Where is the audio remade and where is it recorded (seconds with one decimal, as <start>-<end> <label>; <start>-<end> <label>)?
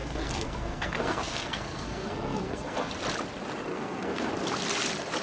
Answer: 0.0-2.9 remade; 2.9-3.7 recorded; 3.7-4.3 remade; 4.3-5.2 recorded